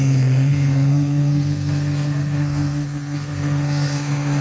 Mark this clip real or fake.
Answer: fake